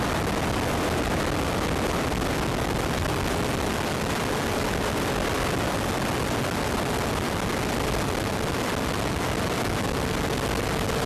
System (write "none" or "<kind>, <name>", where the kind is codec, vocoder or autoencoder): none